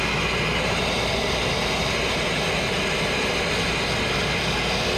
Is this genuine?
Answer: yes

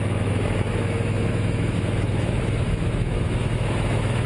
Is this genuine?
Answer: no